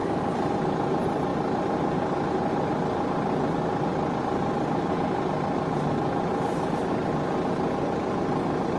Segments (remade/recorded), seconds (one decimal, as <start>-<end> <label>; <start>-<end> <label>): 0.0-0.5 remade; 0.5-1.3 recorded; 1.3-2.7 remade; 2.7-8.8 recorded